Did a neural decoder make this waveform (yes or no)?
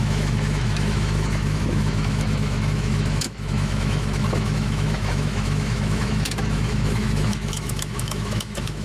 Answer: yes